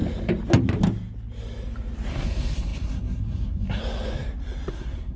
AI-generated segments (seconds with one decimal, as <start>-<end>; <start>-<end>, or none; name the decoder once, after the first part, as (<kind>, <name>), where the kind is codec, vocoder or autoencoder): 2.1-3.8 (codec, SNAC); 4.7-5.2